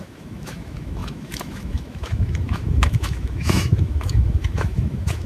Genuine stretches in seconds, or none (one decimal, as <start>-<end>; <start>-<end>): none